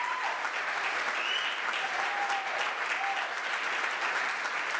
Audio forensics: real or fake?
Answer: real